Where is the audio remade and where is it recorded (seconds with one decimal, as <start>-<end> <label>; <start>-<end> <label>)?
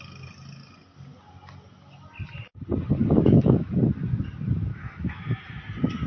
0.0-3.0 recorded; 3.0-3.7 remade; 3.7-4.7 recorded; 4.7-5.6 remade; 5.6-6.1 recorded